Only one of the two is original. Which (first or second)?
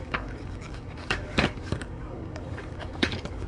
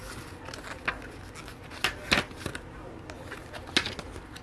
second